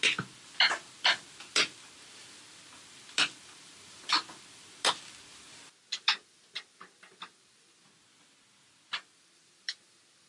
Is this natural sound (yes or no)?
yes